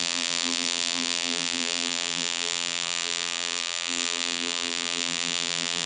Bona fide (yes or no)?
no